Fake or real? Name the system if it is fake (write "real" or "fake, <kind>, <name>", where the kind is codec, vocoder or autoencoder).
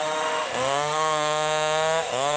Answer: fake, autoencoder, DAC-VAE